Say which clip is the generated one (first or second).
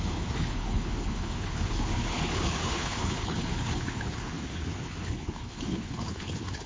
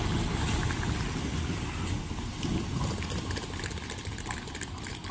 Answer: first